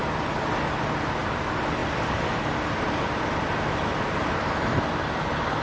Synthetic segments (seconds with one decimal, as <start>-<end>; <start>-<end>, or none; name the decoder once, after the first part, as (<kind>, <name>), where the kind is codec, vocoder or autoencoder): none